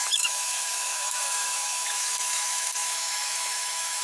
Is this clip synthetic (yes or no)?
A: yes